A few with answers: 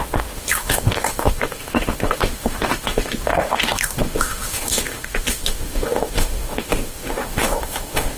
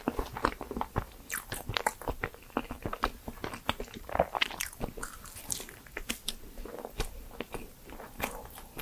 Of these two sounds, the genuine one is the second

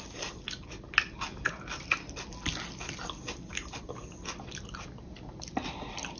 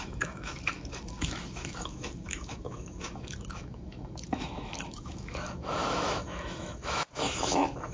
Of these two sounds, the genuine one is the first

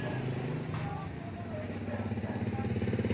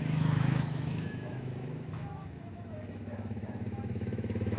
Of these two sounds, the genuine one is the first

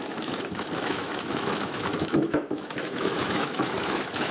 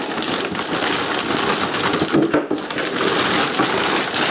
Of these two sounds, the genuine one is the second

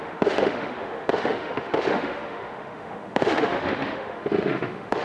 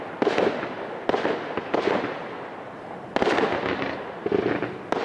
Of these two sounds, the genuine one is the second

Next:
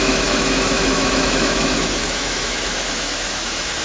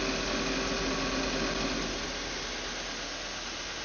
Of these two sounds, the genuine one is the second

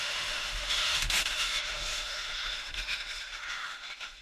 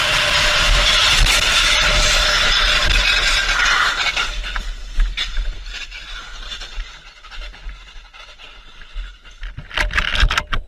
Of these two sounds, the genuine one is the second